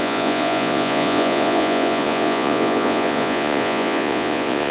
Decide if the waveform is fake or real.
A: fake